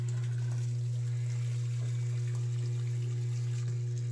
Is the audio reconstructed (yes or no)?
no